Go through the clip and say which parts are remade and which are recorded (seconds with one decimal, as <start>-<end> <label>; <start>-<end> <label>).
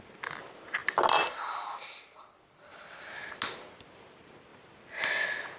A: 0.0-5.6 recorded